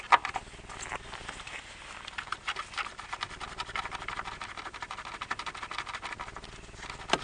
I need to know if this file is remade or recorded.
recorded